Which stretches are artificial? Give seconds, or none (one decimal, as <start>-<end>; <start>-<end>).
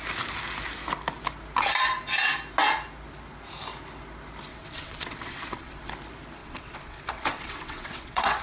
4.5-5.9; 6.4-8.4